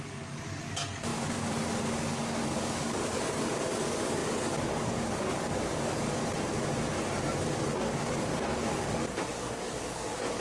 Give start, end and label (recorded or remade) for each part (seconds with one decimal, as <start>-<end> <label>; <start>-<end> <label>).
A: 0.0-6.2 remade; 6.2-7.4 recorded; 7.4-10.4 remade

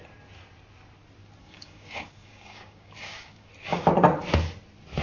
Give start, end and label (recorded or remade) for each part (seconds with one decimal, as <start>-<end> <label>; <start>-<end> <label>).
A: 0.0-1.4 recorded; 1.4-3.5 remade; 3.5-5.0 recorded

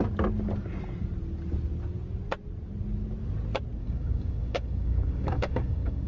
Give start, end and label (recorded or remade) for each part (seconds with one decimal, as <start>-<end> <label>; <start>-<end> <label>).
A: 0.0-3.8 recorded; 3.8-6.1 remade

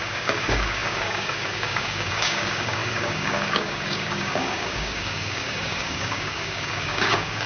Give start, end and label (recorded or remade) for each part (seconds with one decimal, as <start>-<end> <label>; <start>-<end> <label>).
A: 0.0-7.5 remade

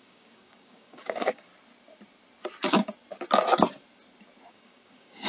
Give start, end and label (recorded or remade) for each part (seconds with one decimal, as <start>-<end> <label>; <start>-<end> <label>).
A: 0.0-1.5 remade; 1.5-4.5 recorded; 4.5-5.3 remade